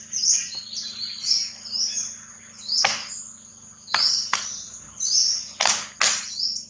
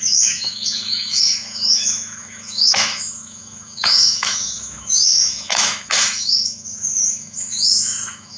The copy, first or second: second